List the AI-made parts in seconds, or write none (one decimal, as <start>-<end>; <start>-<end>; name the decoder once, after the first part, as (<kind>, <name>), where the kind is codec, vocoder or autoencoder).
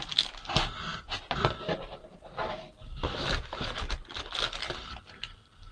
0.9-4.3 (vocoder, BigVGAN v2)